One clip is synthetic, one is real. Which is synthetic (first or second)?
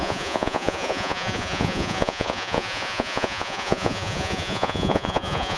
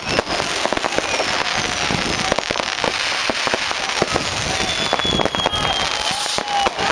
first